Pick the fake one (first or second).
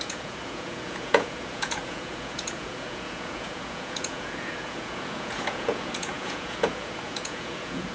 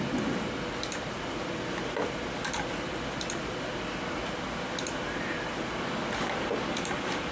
first